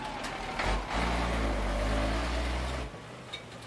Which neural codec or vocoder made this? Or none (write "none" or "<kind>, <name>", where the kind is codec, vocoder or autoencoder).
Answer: none